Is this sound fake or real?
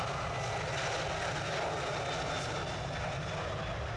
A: real